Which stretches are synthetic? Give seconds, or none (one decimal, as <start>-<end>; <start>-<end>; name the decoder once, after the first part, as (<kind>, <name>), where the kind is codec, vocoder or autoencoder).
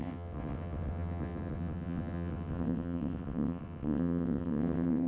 0.0-5.1 (vocoder, WaveNeXt)